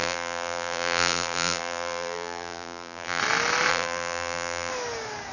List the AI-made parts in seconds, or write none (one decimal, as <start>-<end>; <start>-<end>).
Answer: 0.0-3.2; 3.7-4.7